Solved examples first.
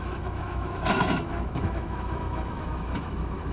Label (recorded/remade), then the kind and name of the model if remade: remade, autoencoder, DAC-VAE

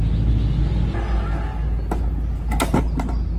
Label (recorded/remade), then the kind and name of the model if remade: recorded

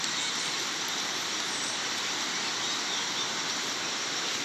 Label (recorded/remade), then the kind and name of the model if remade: recorded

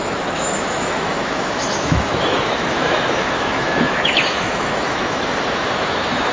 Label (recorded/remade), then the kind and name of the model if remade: remade, autoencoder, DAC-VAE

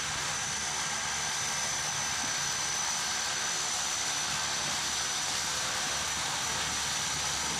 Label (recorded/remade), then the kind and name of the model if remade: recorded